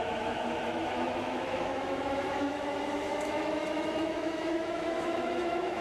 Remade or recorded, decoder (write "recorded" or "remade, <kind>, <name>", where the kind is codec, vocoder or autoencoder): remade, autoencoder, DAC-VAE